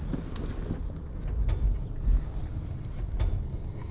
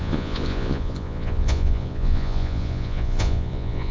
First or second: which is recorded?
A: first